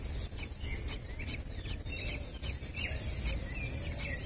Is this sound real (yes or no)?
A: yes